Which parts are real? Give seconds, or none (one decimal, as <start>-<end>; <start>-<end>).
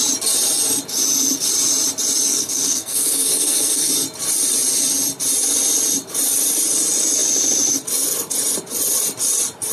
0.0-2.3; 3.9-9.7